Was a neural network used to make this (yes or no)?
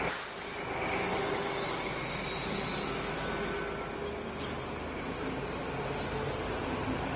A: no